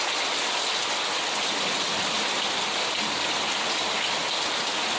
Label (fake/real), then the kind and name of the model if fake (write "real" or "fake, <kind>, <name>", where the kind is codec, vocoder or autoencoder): real